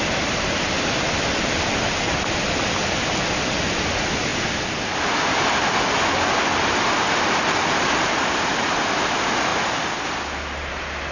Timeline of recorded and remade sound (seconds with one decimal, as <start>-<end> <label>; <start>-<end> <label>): 0.0-11.1 recorded